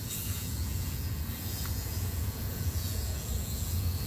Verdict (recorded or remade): remade